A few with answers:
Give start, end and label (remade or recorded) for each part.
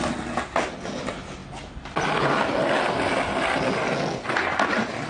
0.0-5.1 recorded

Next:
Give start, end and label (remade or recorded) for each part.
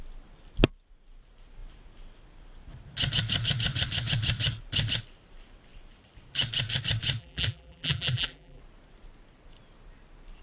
0.0-7.2 recorded; 7.2-8.6 remade; 8.6-10.4 recorded